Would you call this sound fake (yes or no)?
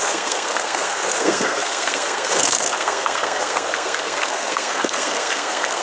yes